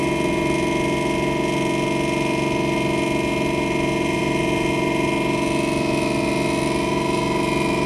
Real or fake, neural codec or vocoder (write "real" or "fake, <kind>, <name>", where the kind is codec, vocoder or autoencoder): real